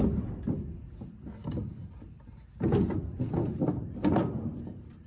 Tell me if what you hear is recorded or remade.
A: remade